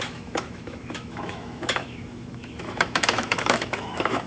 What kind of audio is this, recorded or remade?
remade